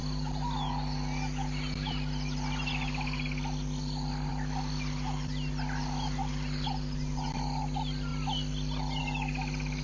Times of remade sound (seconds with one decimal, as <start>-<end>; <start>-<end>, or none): none